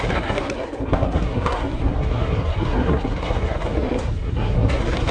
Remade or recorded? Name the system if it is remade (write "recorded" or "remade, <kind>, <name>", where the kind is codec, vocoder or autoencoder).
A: remade, codec, SNAC